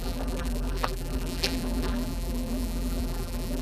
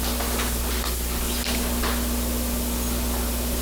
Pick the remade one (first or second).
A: first